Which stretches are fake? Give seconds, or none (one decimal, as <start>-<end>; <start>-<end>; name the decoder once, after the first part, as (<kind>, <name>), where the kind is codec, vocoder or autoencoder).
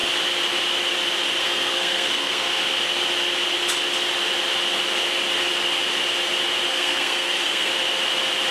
1.4-2.6 (codec, SNAC); 6.7-7.7